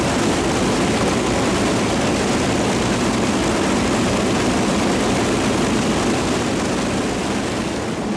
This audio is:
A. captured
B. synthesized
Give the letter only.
A